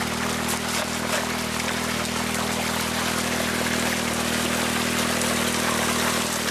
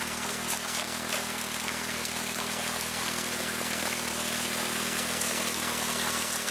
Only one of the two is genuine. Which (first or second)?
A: first